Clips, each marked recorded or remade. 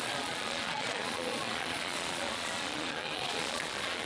remade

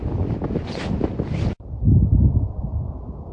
remade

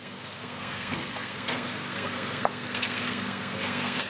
remade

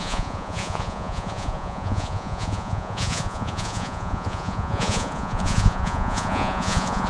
remade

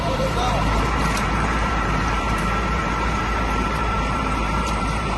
remade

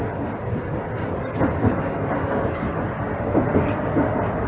recorded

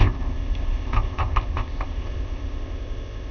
remade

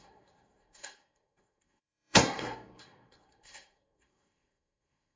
remade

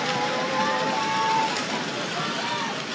recorded